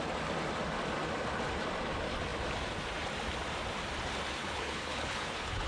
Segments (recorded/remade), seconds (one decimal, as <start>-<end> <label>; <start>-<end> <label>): 0.0-4.4 recorded; 4.4-5.7 remade